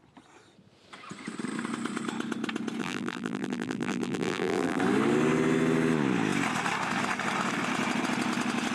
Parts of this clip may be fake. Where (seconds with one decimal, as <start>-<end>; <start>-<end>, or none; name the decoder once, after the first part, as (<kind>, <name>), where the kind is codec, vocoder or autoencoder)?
2.8-4.8 (vocoder, BigVGAN v2)